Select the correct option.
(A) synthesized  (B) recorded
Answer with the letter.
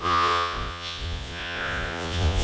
A